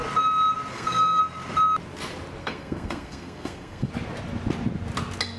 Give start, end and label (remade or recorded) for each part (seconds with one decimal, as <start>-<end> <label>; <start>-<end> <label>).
0.0-0.7 recorded; 0.7-1.2 remade; 1.2-2.4 recorded; 2.4-3.9 remade; 3.9-5.4 recorded